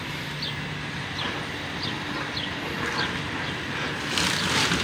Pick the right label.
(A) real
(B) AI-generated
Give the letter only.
A